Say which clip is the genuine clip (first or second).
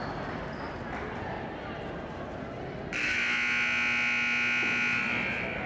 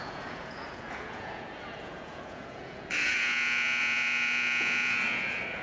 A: first